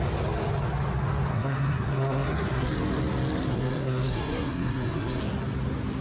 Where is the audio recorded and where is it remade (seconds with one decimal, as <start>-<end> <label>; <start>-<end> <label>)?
0.0-1.3 recorded; 1.3-2.7 remade; 2.7-3.5 recorded; 3.5-5.2 remade; 5.2-6.0 recorded

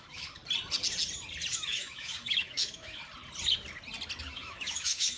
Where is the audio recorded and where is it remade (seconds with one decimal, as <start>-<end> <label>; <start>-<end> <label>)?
0.0-0.4 remade; 0.4-1.5 recorded; 1.5-3.0 remade; 3.0-4.2 recorded; 4.2-5.2 remade

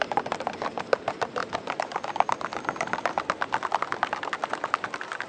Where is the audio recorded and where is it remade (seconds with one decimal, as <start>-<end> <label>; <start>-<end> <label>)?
0.0-5.3 recorded